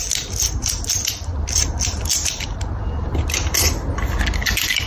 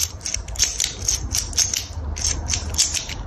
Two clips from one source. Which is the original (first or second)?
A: second